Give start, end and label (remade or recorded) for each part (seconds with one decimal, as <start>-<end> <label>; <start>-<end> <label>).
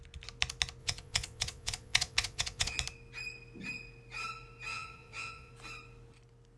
0.0-0.8 recorded; 0.8-2.8 remade; 2.8-4.7 recorded; 4.7-5.5 remade; 5.5-6.6 recorded